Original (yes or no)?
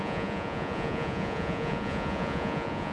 no